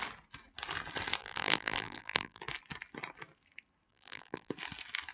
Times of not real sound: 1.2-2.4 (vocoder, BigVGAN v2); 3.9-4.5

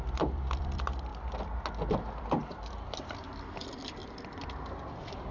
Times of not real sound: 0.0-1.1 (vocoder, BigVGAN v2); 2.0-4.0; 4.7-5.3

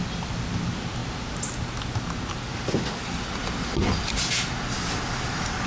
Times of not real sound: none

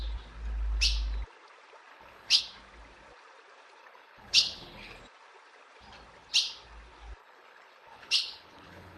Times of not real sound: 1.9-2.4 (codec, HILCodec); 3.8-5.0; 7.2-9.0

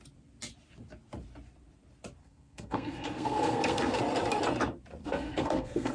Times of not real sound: 2.2-4.0 (codec, SNAC); 5.0-5.9

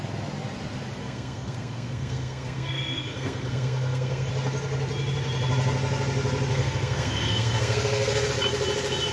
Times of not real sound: 1.0-4.3 (codec, SNAC); 6.5-8.3